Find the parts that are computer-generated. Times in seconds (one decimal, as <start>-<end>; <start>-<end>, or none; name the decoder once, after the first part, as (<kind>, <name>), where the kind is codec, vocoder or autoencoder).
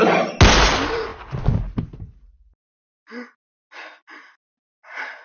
none